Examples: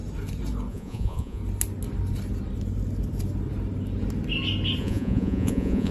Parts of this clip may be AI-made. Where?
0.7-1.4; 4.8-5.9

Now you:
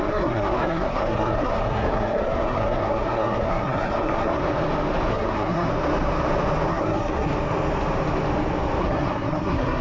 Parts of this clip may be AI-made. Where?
0.0-4.4; 5.1-5.7; 6.7-7.3; 8.8-9.8

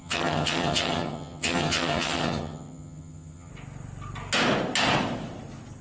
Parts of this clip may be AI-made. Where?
0.0-3.5

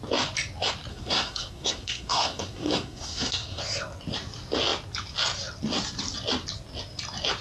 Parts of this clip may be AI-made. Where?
0.9-3.6